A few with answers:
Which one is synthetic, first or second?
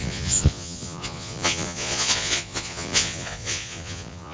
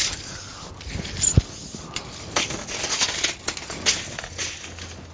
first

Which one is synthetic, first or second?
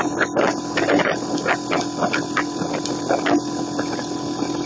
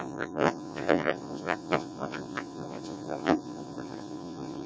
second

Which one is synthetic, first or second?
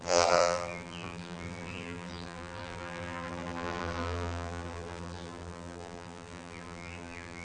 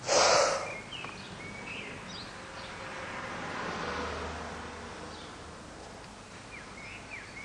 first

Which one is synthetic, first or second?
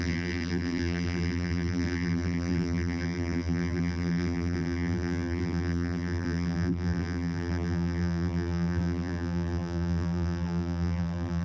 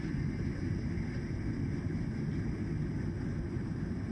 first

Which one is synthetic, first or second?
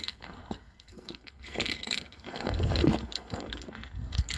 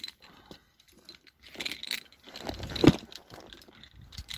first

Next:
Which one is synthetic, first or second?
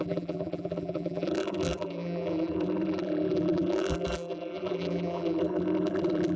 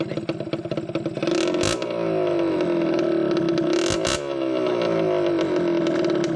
first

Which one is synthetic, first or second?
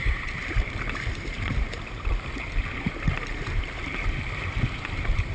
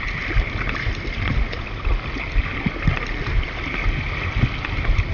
first